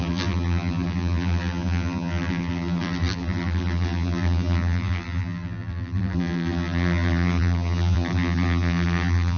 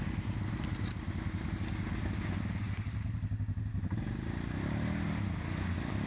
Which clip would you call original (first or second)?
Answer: second